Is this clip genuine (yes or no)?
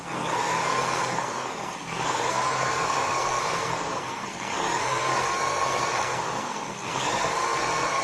no